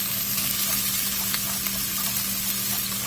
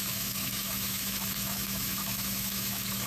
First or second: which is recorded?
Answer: first